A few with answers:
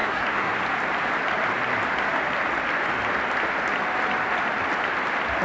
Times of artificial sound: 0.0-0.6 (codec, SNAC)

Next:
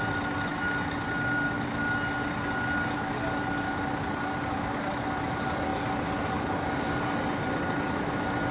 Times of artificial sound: none

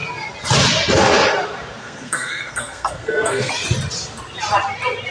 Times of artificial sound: 1.8-3.5 (codec, SNAC)

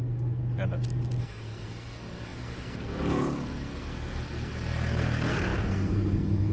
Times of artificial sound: 0.0-0.4 (codec, SNAC); 1.2-6.5

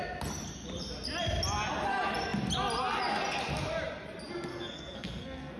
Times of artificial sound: 4.5-5.6 (codec, SNAC)